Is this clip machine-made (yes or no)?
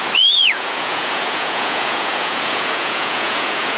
yes